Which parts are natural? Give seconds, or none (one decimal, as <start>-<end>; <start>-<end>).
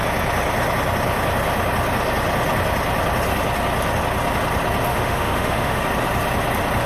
0.0-4.9; 5.8-6.9